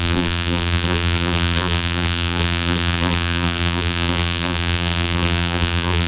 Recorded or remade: remade